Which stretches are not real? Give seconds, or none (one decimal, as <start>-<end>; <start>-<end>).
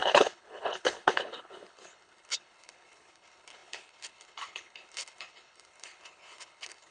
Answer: 0.0-6.9